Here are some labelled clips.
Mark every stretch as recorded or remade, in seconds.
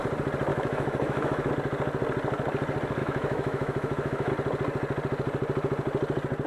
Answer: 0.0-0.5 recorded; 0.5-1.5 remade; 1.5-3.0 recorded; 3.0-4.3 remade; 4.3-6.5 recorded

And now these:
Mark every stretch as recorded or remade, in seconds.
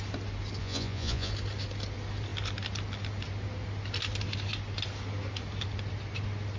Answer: 0.0-0.6 recorded; 0.6-1.3 remade; 1.3-6.6 recorded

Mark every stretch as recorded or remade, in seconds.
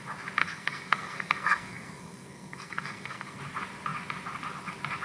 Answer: 0.0-0.4 recorded; 0.4-3.4 remade; 3.4-5.0 recorded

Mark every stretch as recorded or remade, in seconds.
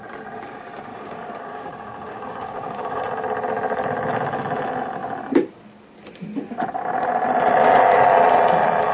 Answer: 0.0-0.9 recorded; 0.9-3.0 remade; 3.0-8.9 recorded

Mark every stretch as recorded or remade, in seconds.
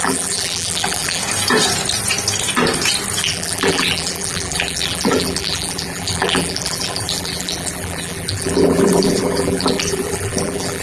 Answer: 0.0-1.2 remade; 1.2-3.2 recorded; 3.2-10.8 remade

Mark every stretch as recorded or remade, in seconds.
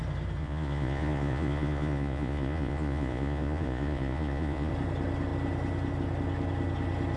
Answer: 0.0-0.4 recorded; 0.4-4.7 remade; 4.7-7.2 recorded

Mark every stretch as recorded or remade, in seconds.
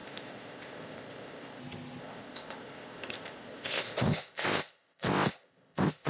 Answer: 0.0-1.6 remade; 1.6-2.0 recorded; 2.0-6.1 remade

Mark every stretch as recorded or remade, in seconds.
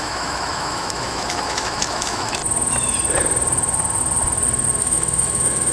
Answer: 0.0-2.4 remade; 2.4-4.8 recorded; 4.8-5.7 remade